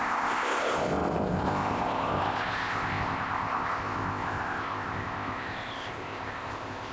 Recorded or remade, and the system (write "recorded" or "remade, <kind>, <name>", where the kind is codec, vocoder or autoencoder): remade, codec, ZipCodec